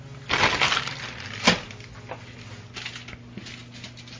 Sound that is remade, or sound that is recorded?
recorded